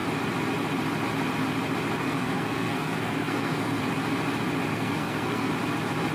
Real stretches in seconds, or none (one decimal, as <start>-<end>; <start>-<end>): 0.0-2.0; 3.8-4.7; 5.5-6.1